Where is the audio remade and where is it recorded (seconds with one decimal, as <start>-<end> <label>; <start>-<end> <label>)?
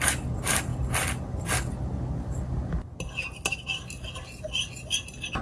0.0-5.4 recorded